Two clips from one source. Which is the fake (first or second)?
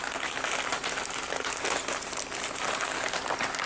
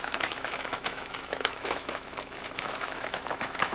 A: second